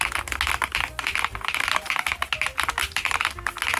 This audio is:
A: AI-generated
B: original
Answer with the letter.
B